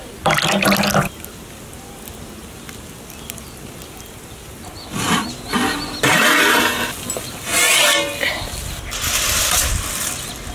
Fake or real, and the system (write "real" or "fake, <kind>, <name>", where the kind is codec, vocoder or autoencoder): real